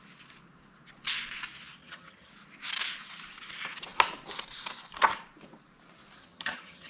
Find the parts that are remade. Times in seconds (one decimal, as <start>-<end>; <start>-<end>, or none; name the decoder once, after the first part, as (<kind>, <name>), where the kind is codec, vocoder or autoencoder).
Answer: 1.8-2.3 (vocoder, HiFi-GAN); 6.2-6.9